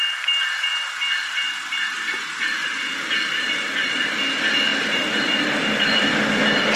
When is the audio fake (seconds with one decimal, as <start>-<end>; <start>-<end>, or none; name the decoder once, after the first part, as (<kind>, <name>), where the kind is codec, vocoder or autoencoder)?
none